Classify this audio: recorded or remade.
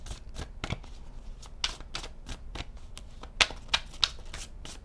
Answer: recorded